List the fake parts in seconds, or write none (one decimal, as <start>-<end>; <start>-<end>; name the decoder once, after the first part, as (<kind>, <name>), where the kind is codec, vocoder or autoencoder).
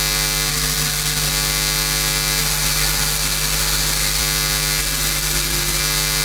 0.5-1.3 (codec, SNAC); 2.4-4.2; 4.8-5.8